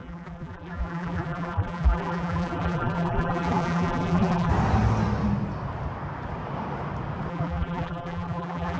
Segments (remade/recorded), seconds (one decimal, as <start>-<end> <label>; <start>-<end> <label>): 0.0-4.5 remade; 4.5-7.3 recorded; 7.3-8.8 remade